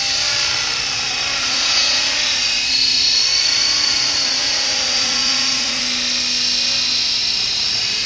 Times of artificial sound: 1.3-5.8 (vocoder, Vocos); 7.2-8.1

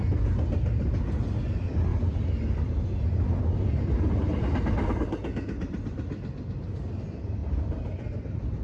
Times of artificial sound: none

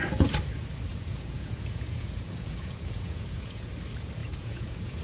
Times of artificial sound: 0.9-3.7 (vocoder, Vocos); 4.2-5.0

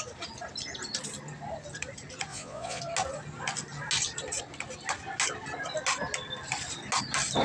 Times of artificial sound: 2.3-2.8 (vocoder, Vocos)

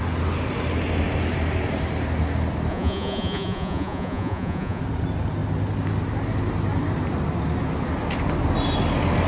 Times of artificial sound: 2.7-4.8 (vocoder, Vocos)

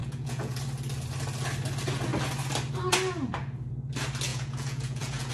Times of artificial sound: 0.0-0.6 (vocoder, Vocos); 4.3-5.3